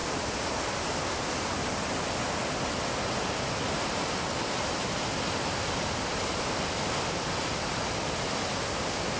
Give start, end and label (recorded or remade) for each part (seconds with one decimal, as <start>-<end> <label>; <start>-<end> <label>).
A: 0.0-9.2 recorded